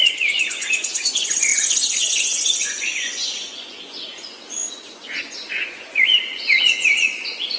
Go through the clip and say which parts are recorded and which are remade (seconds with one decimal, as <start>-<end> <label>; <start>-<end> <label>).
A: 0.0-7.6 remade